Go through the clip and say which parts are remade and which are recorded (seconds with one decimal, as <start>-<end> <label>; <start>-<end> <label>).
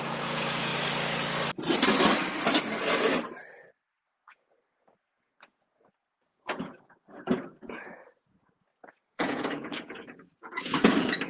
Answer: 0.0-0.7 remade; 0.7-4.1 recorded; 4.1-11.3 remade